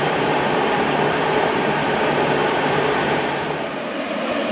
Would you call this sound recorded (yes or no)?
no